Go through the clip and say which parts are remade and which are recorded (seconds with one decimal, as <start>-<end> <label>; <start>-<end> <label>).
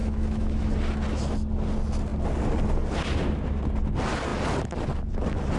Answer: 0.0-0.7 remade; 0.7-5.6 recorded